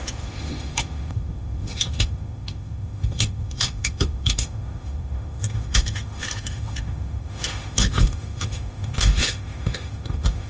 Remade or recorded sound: remade